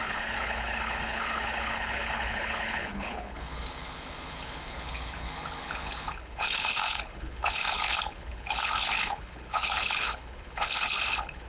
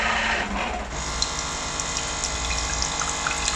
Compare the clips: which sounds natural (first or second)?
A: second